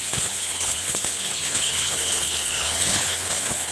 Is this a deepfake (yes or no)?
yes